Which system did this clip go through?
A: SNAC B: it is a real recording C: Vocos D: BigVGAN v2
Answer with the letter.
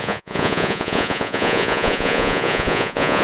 C